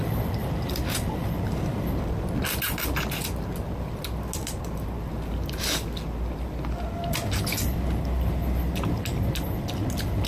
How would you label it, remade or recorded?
recorded